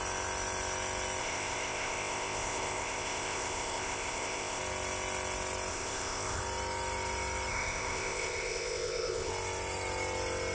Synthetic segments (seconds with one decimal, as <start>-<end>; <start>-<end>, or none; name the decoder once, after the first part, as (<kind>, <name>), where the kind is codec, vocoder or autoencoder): 1.2-4.6 (codec, ZipCodec); 5.7-6.4; 7.5-9.3